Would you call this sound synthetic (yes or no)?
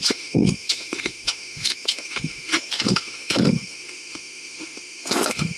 yes